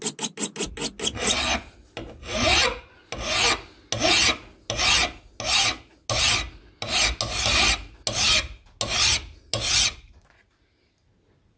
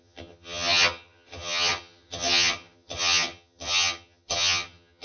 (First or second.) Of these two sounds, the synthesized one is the second